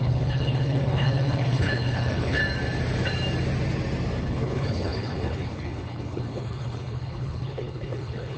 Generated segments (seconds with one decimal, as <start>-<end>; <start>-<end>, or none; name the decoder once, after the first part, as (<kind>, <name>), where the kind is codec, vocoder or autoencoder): 0.0-2.4 (codec, HILCodec); 4.2-8.4